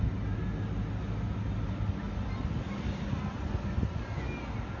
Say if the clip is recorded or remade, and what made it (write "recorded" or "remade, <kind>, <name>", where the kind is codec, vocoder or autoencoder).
recorded